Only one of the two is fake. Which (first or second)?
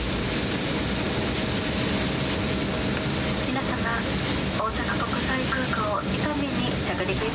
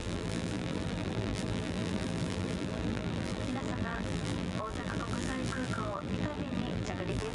second